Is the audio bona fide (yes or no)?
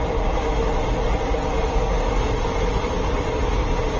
yes